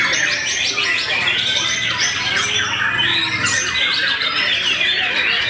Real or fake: real